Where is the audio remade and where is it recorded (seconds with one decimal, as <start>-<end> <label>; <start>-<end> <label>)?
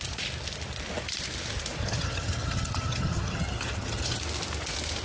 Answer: 0.0-1.8 recorded; 1.8-4.2 remade; 4.2-5.0 recorded